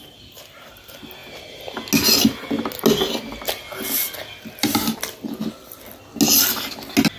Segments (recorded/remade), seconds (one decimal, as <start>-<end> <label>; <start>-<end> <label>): 0.0-7.2 recorded